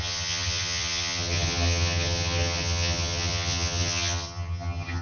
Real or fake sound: fake